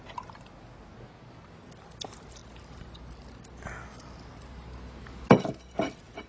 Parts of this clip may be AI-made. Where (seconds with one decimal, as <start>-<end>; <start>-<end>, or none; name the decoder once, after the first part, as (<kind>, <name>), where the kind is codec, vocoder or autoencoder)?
none

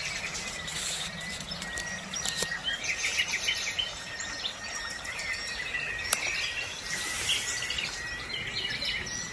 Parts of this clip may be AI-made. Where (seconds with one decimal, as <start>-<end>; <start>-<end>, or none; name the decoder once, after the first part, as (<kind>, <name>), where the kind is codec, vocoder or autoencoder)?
2.6-6.2 (vocoder, BigVGAN v2)

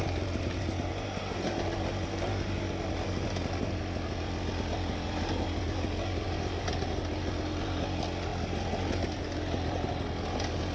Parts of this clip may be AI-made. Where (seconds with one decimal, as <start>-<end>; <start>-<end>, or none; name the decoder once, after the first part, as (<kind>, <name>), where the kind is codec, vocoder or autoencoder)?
none

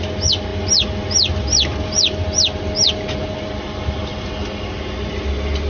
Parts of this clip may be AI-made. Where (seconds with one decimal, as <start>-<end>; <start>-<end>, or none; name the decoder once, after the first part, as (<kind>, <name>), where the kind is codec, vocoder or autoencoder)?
none

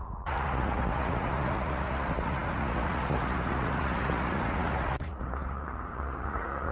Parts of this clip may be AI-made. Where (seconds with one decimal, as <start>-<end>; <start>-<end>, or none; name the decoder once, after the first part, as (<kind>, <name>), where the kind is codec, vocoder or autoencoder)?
0.0-6.7 (vocoder, Vocos)